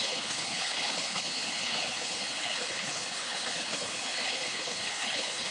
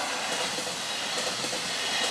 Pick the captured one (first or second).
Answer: second